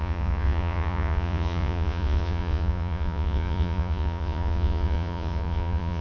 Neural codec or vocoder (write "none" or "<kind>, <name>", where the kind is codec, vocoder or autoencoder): vocoder, Vocos